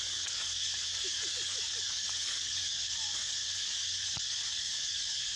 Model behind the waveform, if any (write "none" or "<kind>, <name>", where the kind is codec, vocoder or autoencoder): codec, DAC